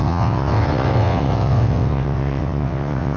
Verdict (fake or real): fake